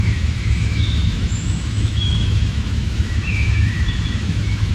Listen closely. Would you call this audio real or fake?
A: fake